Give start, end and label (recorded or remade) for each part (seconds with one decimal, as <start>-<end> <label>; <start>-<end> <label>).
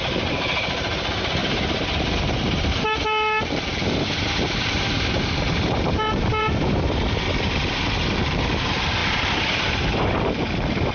0.0-10.9 remade